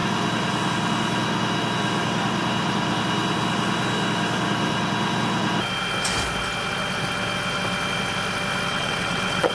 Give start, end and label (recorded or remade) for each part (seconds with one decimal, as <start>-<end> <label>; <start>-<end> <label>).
0.0-8.7 recorded; 8.7-9.5 remade